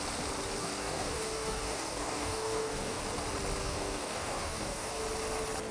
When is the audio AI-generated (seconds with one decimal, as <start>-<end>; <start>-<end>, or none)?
0.6-3.0; 3.6-5.0